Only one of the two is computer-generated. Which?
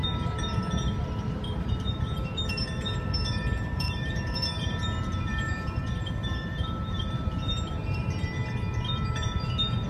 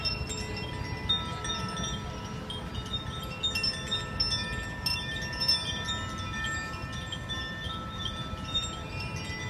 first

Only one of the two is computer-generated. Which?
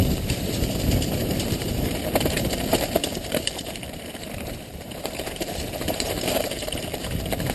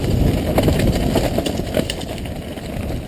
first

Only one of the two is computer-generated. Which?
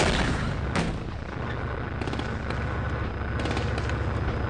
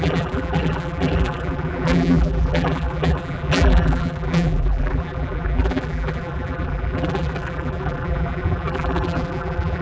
second